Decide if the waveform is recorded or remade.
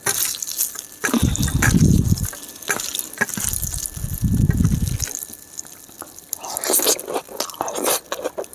recorded